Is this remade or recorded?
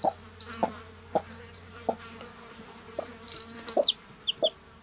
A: recorded